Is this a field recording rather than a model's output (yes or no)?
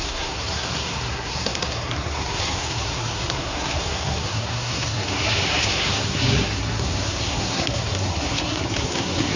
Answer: no